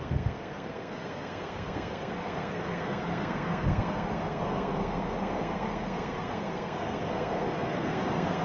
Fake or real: fake